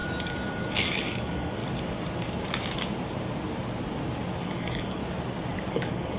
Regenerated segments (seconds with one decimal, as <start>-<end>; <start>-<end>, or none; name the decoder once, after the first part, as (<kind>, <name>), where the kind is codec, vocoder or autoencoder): 0.0-1.6 (codec, DAC); 4.4-5.0; 5.7-6.2